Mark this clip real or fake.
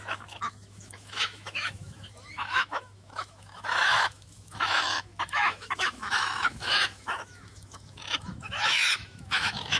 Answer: fake